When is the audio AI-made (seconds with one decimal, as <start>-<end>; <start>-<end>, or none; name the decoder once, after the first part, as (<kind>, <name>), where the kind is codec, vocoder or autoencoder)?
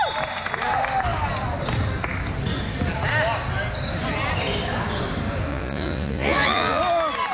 5.5-6.8 (vocoder, Vocos)